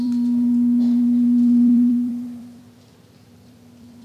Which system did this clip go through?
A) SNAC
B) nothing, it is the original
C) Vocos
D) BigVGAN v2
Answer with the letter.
D